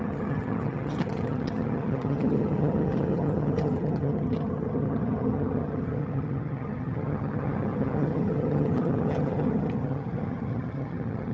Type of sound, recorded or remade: remade